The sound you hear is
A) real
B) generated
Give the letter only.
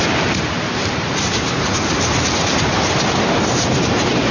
B